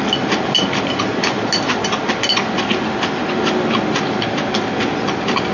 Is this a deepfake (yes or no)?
no